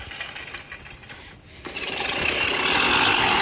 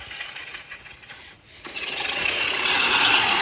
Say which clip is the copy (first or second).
second